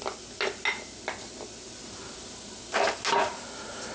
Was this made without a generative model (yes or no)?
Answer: yes